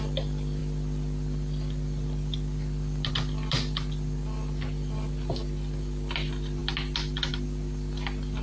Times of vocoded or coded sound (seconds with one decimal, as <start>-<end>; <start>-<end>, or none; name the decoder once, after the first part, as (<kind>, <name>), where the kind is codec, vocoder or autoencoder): none